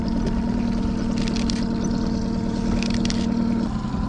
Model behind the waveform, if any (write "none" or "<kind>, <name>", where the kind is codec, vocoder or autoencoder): none